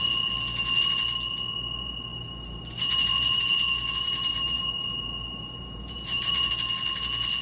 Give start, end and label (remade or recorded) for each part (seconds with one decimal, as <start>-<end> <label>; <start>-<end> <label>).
0.0-2.1 recorded; 2.1-6.5 remade; 6.5-7.4 recorded